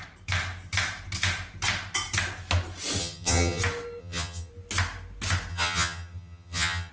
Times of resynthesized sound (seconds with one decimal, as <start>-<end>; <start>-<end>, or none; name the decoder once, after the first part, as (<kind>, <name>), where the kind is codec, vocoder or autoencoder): 3.0-3.6 (vocoder, HiFi-GAN); 4.0-4.5; 5.5-6.9